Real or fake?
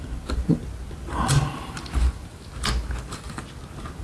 real